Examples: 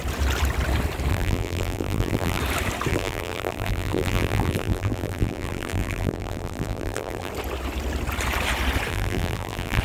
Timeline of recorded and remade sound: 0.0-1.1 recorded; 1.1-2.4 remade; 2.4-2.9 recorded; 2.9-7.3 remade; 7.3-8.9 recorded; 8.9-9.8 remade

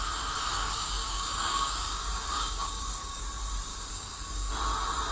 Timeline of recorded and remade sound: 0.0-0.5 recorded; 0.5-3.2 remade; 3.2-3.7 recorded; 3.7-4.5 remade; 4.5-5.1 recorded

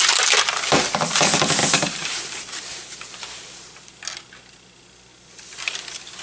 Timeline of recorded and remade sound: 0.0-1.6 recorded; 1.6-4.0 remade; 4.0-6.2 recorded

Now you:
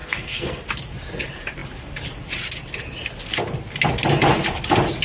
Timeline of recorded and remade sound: 0.0-0.6 remade; 0.6-5.0 recorded

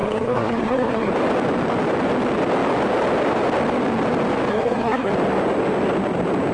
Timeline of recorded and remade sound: 0.0-1.1 remade; 1.1-4.5 recorded; 4.5-5.1 remade; 5.1-6.5 recorded